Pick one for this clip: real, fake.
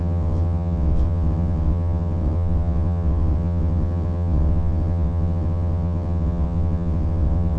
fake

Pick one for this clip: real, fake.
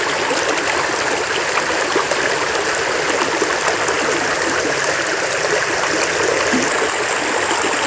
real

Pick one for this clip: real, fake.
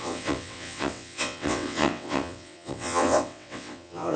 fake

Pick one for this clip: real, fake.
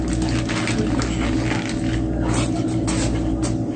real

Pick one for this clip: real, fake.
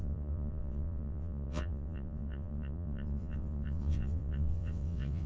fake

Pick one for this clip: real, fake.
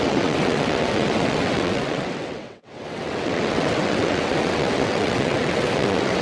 fake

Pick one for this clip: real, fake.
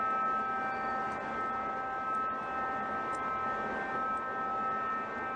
real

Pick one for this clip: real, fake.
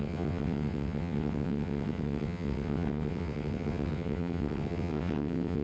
fake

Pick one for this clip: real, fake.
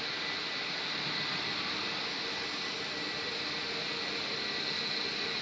real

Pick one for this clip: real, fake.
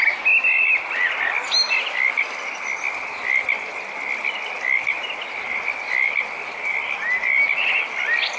real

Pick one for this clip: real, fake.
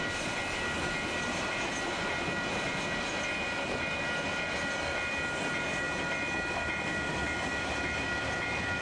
real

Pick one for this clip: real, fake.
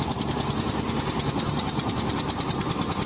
real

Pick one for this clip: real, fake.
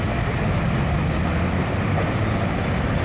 real